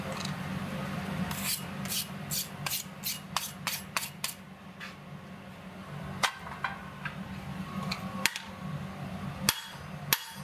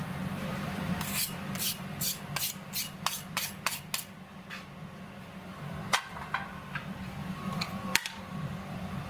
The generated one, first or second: second